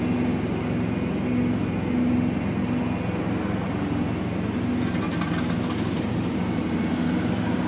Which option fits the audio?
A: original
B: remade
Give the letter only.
A